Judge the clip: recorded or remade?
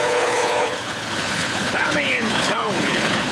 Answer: remade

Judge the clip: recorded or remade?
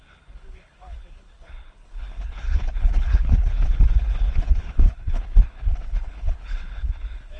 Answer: remade